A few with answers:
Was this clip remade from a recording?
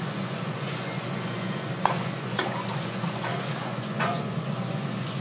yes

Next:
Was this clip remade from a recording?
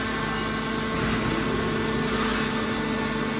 no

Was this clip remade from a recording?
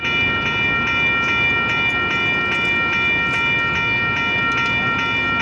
no